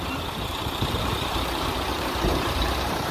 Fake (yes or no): yes